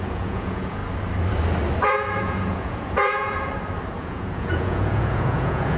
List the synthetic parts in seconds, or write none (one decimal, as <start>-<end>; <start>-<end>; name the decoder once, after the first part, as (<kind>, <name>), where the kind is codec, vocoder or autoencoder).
0.0-0.8 (vocoder, Vocos); 1.8-3.5; 4.0-5.8